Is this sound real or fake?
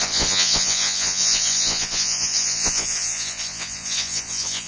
fake